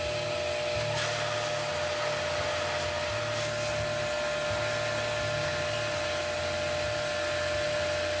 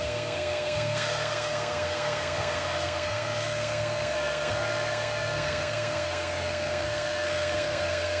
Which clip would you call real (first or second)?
first